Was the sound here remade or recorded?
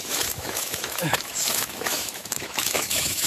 remade